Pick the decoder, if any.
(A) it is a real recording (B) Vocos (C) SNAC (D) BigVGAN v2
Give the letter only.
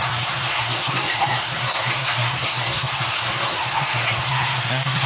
C